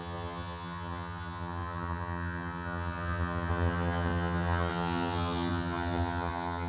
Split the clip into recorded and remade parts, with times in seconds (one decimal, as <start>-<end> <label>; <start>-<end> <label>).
0.0-6.7 remade